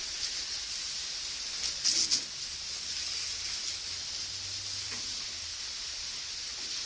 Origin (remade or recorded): recorded